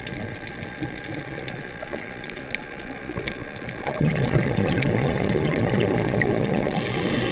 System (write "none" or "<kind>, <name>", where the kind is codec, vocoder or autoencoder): vocoder, Vocos